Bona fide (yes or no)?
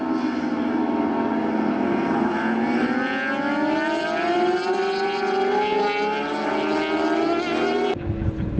yes